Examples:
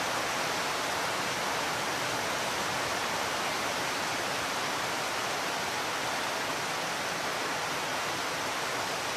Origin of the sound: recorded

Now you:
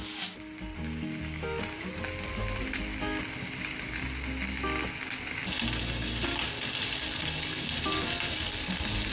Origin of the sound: recorded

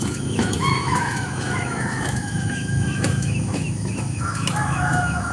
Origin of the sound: remade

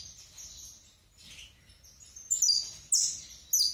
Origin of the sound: recorded